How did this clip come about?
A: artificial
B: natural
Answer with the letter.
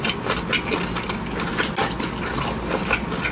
B